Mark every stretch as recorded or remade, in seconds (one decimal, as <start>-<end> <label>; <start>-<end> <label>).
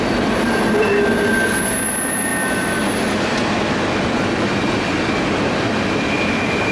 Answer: 0.0-6.7 recorded